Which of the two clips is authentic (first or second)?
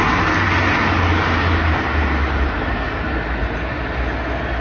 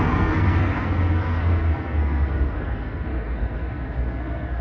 first